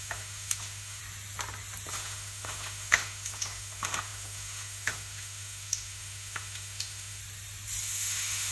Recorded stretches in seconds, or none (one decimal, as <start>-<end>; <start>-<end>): 1.0-1.9; 7.2-7.8